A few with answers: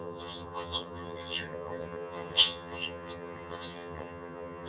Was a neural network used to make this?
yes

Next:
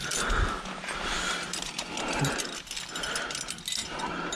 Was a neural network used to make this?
no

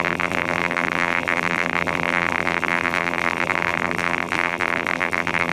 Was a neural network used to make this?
yes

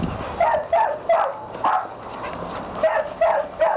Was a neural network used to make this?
no